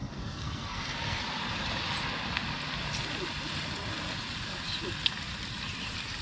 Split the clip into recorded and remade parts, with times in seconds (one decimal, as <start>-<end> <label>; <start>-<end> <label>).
0.0-1.2 remade; 1.2-6.2 recorded